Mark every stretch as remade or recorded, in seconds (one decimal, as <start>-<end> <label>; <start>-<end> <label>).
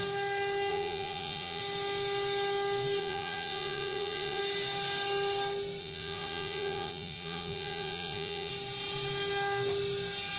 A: 0.0-0.7 recorded; 0.7-1.6 remade; 1.6-3.0 recorded; 3.0-4.4 remade; 4.4-5.8 recorded; 5.8-8.5 remade; 8.5-10.4 recorded